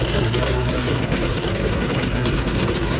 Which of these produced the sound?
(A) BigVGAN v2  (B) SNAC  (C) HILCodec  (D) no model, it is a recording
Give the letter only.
B